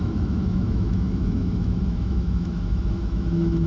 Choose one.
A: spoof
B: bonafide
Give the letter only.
A